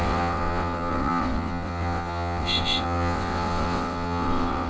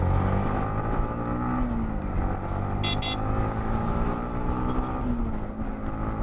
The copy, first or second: first